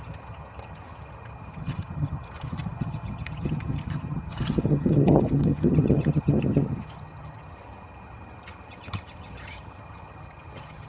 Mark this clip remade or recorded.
remade